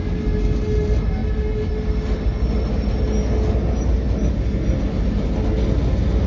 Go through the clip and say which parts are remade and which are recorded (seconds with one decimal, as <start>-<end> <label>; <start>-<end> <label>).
0.0-6.3 recorded